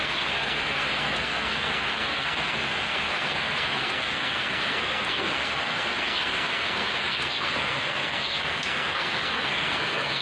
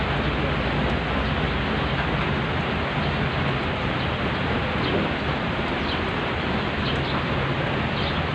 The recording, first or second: second